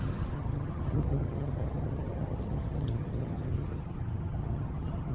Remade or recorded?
remade